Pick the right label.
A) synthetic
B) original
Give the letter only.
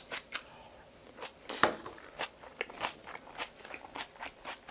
B